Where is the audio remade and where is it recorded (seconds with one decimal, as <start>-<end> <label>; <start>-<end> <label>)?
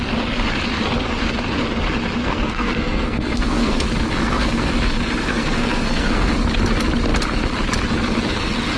0.0-2.2 recorded; 2.2-3.8 remade; 3.8-4.2 recorded; 4.2-4.7 remade; 4.7-5.2 recorded; 5.2-6.3 remade; 6.3-8.8 recorded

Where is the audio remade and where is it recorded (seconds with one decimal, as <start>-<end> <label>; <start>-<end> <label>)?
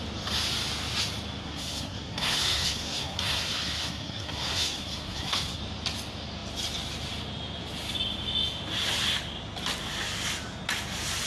0.0-1.4 recorded; 1.4-5.6 remade; 5.6-11.3 recorded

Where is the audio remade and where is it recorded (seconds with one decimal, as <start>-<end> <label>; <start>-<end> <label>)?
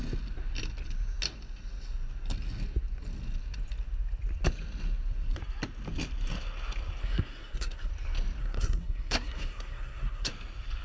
0.0-7.0 recorded; 7.0-7.9 remade; 7.9-8.4 recorded; 8.4-10.3 remade; 10.3-10.8 recorded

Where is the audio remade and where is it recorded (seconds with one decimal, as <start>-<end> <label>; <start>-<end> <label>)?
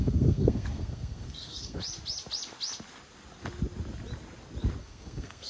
0.0-1.8 remade; 1.8-4.8 recorded; 4.8-5.5 remade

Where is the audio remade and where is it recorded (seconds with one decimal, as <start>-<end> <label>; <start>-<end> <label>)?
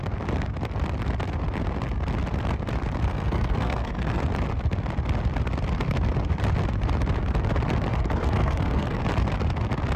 0.0-3.1 recorded; 3.1-4.2 remade; 4.2-7.9 recorded; 7.9-9.0 remade; 9.0-10.0 recorded